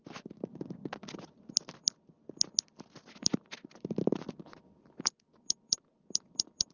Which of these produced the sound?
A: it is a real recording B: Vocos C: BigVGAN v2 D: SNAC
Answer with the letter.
A